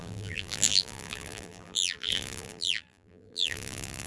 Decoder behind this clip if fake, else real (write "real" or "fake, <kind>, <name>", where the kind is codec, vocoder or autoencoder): fake, vocoder, BigVGAN v2